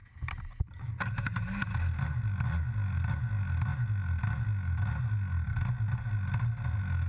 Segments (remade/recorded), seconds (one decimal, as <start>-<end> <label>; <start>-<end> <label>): 0.0-7.1 recorded